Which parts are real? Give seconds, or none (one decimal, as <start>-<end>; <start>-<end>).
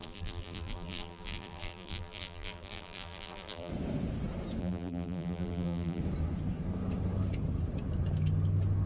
3.7-4.6; 6.0-8.9